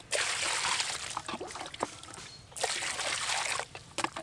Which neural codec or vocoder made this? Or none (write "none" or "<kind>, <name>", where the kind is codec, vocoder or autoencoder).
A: none